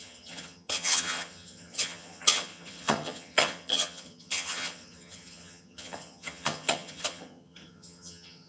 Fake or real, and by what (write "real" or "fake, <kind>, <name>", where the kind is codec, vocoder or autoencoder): fake, vocoder, HiFi-GAN